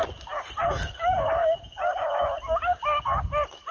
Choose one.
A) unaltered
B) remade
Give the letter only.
A